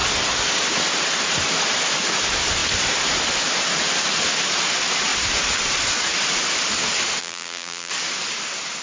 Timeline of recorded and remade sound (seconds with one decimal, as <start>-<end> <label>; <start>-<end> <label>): 0.0-7.2 recorded; 7.2-7.9 remade; 7.9-8.8 recorded